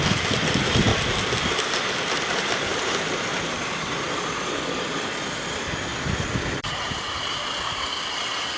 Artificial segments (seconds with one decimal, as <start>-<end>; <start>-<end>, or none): none